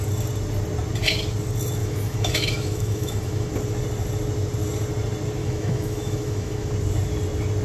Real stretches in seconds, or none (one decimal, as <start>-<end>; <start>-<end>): 0.0-1.8; 3.5-5.4; 6.7-7.6